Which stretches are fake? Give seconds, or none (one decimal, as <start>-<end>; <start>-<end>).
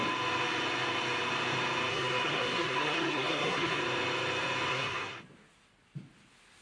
1.9-3.8; 4.7-5.2